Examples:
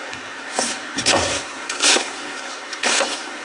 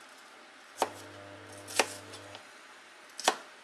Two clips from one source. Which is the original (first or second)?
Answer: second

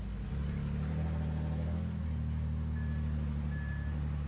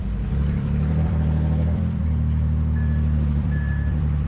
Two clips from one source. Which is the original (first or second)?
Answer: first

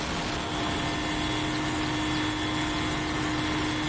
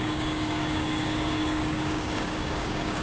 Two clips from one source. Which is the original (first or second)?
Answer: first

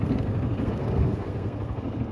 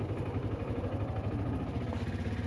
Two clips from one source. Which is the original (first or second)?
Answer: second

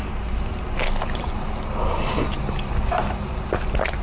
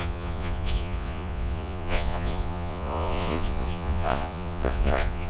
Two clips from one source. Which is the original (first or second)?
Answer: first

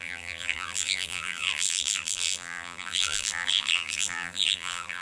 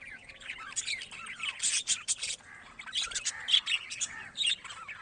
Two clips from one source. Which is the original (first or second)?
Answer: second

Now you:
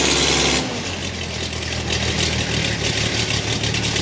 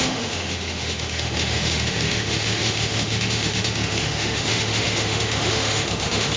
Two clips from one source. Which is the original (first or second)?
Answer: first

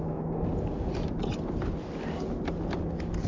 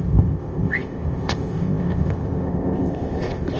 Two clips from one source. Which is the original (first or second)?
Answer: first